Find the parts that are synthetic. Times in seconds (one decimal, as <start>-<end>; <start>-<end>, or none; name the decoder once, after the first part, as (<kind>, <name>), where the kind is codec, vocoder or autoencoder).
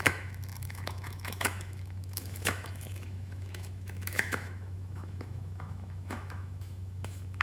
0.0-7.4 (autoencoder, DAC-VAE)